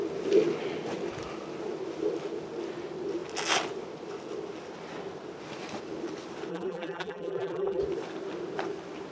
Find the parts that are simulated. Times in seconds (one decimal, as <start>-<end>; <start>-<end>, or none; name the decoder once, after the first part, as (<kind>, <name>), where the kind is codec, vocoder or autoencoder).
6.5-7.8 (vocoder, BigVGAN v2)